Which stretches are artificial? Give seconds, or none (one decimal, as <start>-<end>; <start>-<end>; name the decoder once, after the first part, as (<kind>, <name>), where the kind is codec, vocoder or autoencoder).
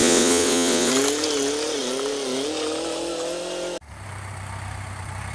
0.0-0.9 (vocoder, WaveNeXt)